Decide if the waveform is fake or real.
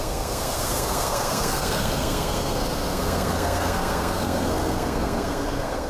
fake